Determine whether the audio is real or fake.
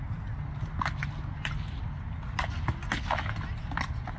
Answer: real